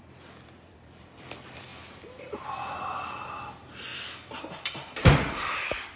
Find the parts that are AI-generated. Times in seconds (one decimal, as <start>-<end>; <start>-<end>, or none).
0.0-1.7; 3.0-6.0